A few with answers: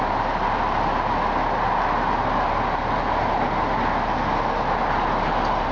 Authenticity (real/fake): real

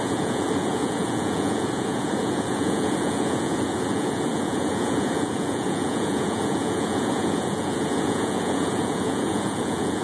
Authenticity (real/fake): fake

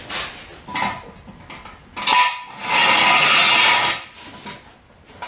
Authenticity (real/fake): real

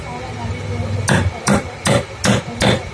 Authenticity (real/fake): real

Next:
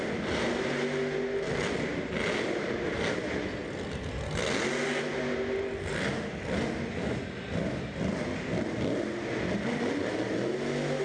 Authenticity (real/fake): real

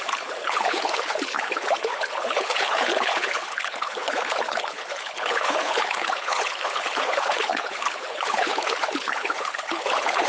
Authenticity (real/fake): fake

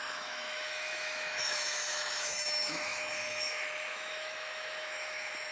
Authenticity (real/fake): fake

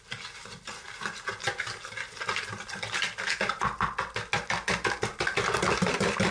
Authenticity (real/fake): real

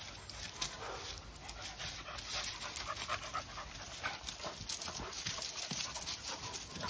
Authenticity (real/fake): real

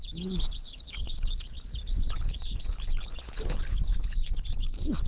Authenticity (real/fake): fake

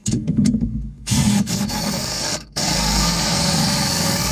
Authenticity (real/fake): fake